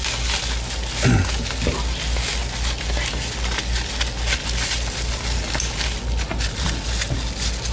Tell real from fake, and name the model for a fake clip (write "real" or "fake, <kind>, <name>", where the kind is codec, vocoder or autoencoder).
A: real